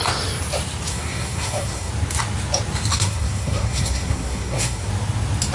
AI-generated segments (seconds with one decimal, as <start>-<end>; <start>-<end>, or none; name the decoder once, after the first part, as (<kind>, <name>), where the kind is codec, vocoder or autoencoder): 0.9-1.9 (codec, SNAC); 2.9-4.9